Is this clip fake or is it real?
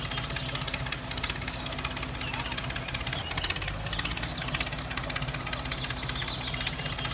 real